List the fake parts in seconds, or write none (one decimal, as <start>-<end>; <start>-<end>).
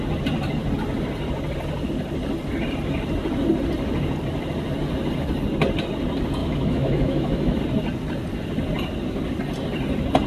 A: 6.4-7.6